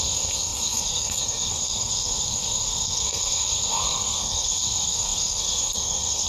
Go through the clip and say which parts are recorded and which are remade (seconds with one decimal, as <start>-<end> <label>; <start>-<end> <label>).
0.0-6.3 remade